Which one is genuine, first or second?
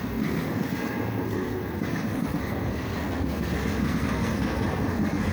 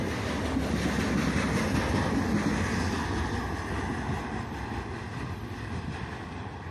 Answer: second